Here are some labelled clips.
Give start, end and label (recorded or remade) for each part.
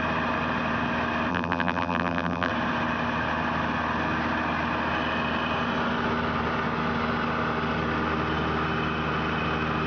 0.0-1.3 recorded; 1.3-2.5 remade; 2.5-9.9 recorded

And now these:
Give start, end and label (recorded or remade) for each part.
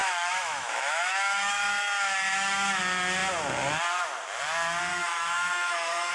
0.0-2.8 remade; 2.8-4.9 recorded; 4.9-6.1 remade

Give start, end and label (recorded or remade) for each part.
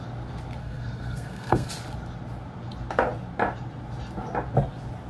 0.0-0.6 recorded; 0.6-1.7 remade; 1.7-5.1 recorded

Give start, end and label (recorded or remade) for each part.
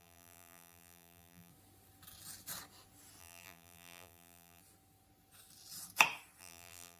0.0-1.5 remade; 1.5-3.2 recorded; 3.2-4.6 remade; 4.6-6.4 recorded; 6.4-7.0 remade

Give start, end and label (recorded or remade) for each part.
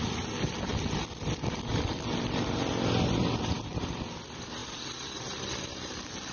0.0-0.7 remade; 0.7-1.7 recorded; 1.7-4.6 remade; 4.6-5.6 recorded; 5.6-6.3 remade